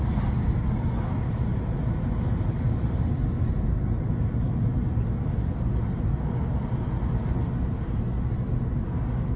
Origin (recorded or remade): recorded